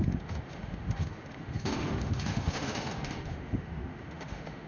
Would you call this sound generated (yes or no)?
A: yes